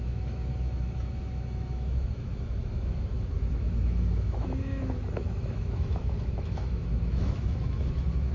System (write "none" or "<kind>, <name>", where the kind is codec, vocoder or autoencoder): autoencoder, DAC-VAE